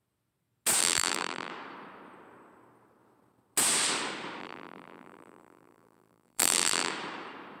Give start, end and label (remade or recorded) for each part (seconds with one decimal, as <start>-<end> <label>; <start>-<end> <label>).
0.0-0.8 recorded; 0.8-1.5 remade; 1.5-4.4 recorded; 4.4-6.9 remade; 6.9-7.6 recorded